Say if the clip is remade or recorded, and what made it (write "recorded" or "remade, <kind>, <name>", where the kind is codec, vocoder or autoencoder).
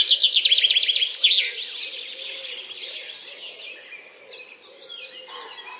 recorded